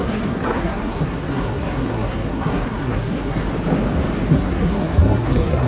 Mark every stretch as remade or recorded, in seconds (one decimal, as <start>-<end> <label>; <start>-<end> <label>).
0.0-3.4 remade; 3.4-4.3 recorded; 4.3-5.7 remade